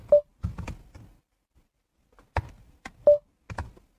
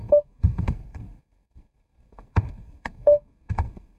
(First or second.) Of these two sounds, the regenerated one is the second